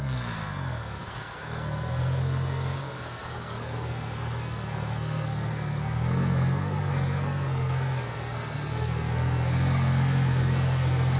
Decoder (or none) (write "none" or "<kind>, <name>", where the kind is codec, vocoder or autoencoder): codec, SNAC